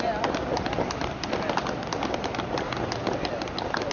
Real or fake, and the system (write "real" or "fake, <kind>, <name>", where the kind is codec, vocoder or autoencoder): real